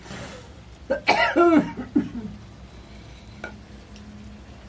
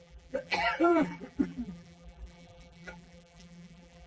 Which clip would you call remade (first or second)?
second